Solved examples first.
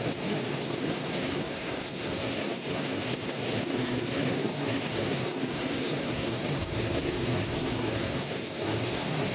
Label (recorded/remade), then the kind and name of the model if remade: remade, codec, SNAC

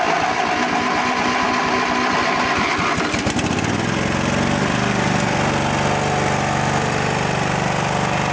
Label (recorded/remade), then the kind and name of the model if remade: recorded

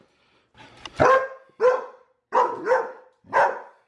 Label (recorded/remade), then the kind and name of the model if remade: recorded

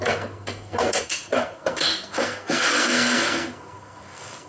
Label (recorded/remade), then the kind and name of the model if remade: remade, codec, SNAC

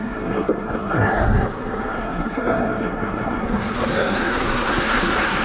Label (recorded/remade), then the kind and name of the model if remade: remade, codec, SNAC